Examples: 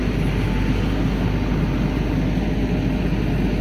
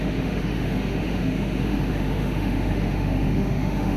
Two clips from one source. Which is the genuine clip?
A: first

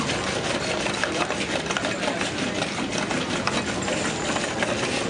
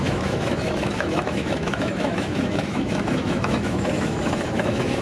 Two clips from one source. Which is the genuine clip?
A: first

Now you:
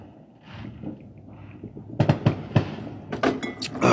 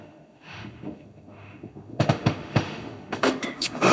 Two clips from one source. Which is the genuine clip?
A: first